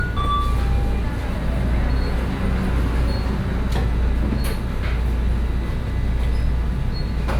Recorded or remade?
recorded